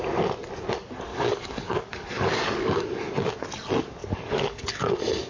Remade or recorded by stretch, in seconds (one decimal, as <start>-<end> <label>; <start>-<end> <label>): 0.0-1.1 recorded; 1.1-3.3 remade; 3.3-4.0 recorded; 4.0-4.8 remade; 4.8-5.3 recorded